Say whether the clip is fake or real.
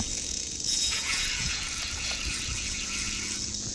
fake